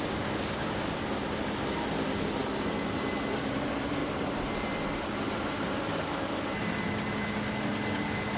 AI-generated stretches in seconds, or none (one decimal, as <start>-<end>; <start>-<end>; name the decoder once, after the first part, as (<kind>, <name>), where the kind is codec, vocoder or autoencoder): 4.0-5.5 (vocoder, BigVGAN v2)